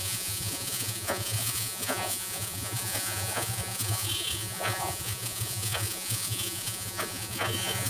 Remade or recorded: remade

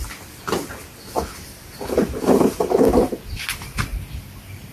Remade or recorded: recorded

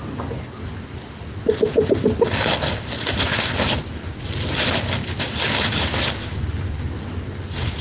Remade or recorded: recorded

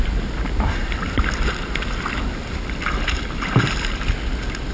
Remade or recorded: recorded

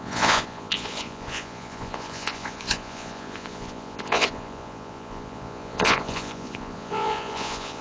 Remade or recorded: remade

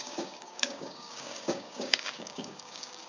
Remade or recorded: remade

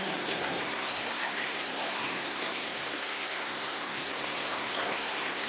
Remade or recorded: remade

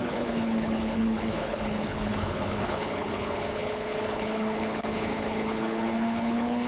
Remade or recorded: remade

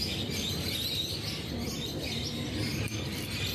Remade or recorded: recorded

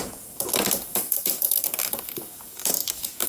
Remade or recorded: remade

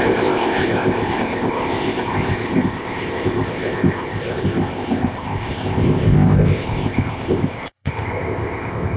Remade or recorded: remade